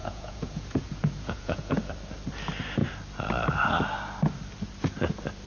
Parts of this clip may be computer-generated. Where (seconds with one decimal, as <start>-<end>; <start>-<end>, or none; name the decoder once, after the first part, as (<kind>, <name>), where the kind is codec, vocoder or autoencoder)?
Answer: 0.0-1.9 (vocoder, Vocos)